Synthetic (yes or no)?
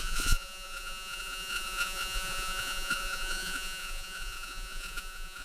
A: yes